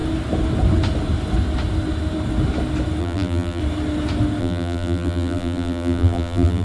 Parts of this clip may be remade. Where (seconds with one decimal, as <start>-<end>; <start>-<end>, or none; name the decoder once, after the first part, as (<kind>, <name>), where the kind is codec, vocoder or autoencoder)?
3.0-3.6 (vocoder, BigVGAN v2); 4.4-6.6

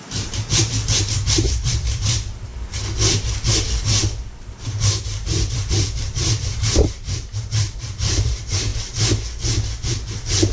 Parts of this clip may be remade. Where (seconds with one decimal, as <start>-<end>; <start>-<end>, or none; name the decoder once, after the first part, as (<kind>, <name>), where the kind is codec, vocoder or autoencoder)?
0.0-2.5 (vocoder, BigVGAN v2); 4.4-8.7; 9.9-10.5